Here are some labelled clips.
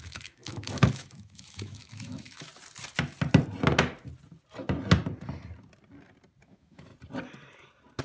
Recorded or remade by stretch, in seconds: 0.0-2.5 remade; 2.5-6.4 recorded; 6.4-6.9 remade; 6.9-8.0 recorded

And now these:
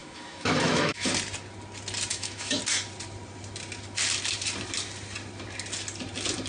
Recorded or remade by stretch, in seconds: 0.0-1.1 remade; 1.1-2.1 recorded; 2.1-2.6 remade; 2.6-6.5 recorded

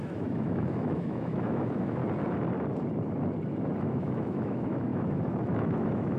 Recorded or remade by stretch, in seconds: 0.0-2.0 remade; 2.0-3.8 recorded; 3.8-6.2 remade